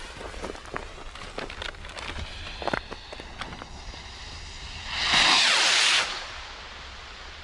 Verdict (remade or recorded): recorded